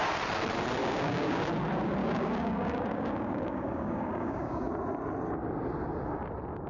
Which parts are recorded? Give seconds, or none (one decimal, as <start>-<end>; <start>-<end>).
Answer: 0.0-0.8; 1.4-2.0; 4.7-6.7